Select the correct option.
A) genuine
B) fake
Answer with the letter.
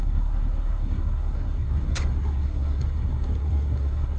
B